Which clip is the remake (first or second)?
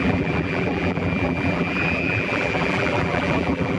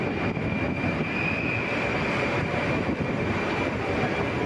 first